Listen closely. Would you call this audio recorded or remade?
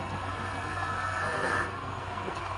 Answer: remade